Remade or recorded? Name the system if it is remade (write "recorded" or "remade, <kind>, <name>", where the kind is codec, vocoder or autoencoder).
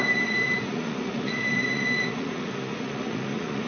remade, vocoder, Vocos